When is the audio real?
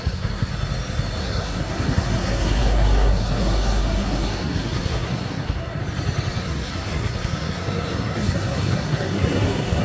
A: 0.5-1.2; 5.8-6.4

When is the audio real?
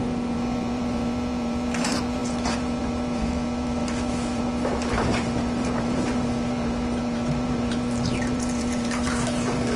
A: none